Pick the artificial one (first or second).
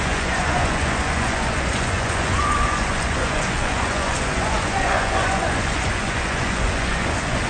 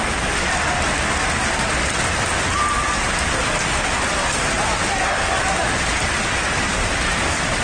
first